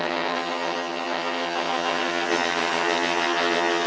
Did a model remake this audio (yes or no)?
yes